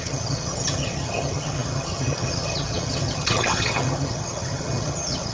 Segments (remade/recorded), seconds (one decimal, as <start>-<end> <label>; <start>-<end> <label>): 0.0-5.3 remade